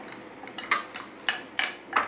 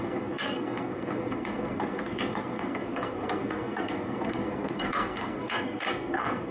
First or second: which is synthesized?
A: second